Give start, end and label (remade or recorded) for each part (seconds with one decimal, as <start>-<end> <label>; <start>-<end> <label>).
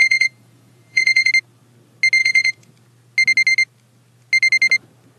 0.0-1.3 remade; 1.3-2.2 recorded; 2.2-2.7 remade; 2.7-5.2 recorded